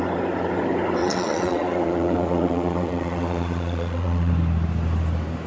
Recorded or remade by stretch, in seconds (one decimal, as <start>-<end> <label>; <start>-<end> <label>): 0.0-1.0 recorded; 1.0-4.3 remade; 4.3-5.5 recorded